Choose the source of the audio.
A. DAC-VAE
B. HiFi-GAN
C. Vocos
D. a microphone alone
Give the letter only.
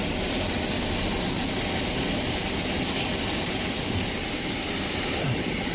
D